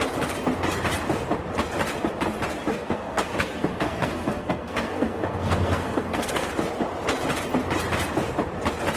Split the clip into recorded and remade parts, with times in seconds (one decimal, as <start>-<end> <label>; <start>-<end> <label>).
0.0-2.7 recorded; 2.7-6.5 remade; 6.5-9.0 recorded